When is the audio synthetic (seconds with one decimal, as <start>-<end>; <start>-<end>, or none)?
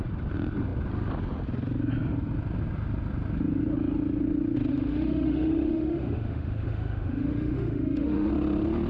4.7-8.3